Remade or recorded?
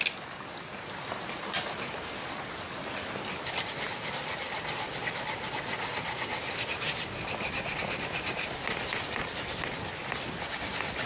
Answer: recorded